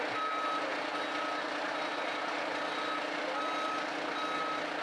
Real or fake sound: real